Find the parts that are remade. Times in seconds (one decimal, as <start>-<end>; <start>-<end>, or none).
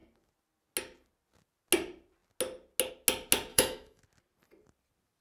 3.5-4.0